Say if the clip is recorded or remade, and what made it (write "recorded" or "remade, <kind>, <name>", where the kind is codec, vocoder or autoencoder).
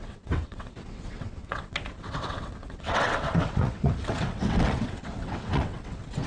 remade, vocoder, WaveNeXt